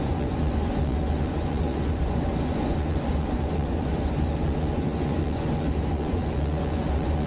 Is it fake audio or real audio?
fake